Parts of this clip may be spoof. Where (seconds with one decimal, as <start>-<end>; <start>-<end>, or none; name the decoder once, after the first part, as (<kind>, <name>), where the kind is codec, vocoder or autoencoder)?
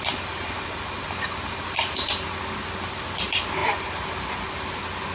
none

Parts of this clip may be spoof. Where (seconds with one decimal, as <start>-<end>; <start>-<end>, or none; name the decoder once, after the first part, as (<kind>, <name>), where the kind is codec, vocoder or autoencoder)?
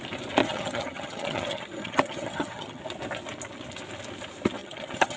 0.4-2.8 (vocoder, HiFi-GAN); 4.6-5.2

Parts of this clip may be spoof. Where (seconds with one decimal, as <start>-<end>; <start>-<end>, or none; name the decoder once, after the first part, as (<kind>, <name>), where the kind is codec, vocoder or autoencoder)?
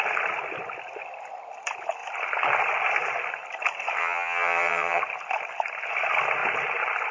4.0-5.0 (vocoder, HiFi-GAN)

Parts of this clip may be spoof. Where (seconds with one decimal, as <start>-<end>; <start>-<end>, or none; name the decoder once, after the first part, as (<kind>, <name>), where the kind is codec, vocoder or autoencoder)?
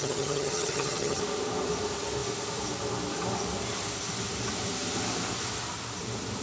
0.0-1.2 (vocoder, HiFi-GAN)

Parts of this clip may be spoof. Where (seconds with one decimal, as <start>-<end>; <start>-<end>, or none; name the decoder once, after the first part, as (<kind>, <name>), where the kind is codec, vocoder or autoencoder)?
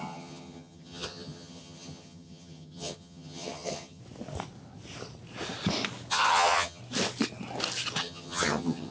0.0-4.0 (vocoder, HiFi-GAN); 6.1-6.8; 8.0-8.9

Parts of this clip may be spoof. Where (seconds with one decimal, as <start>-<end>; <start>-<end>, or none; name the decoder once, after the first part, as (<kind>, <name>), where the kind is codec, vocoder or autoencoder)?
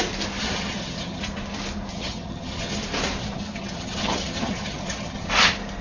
0.4-1.2 (vocoder, HiFi-GAN); 1.9-2.8; 3.2-5.3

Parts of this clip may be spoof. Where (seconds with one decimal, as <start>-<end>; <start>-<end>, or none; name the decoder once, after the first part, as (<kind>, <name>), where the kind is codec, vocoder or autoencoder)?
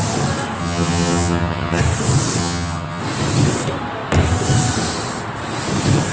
0.6-1.8 (vocoder, HiFi-GAN); 2.4-3.0